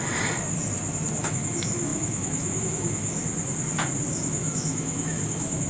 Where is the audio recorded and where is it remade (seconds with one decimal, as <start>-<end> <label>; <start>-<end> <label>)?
0.0-1.2 recorded; 1.2-3.2 remade; 3.2-4.1 recorded; 4.1-5.7 remade